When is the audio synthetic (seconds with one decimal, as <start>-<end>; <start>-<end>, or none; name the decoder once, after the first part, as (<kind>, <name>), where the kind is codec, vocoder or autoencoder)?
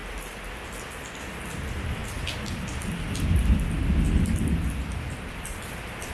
none